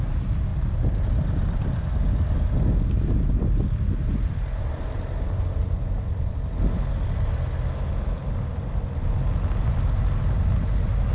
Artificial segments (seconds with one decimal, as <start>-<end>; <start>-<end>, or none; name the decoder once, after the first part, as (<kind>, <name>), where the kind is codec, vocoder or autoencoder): none